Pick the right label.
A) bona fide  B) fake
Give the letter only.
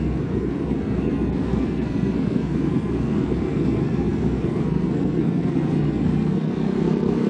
B